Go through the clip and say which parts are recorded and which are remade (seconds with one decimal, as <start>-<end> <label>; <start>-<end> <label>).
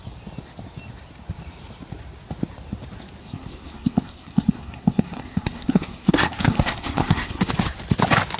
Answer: 0.0-3.2 recorded; 3.2-7.5 remade; 7.5-8.4 recorded